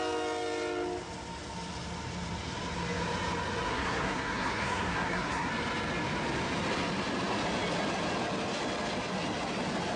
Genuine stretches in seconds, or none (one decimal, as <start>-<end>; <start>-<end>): 0.0-3.7; 5.5-10.0